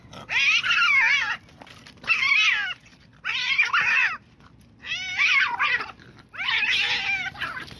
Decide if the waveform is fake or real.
real